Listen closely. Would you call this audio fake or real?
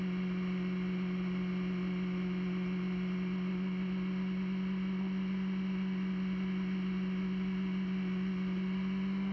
real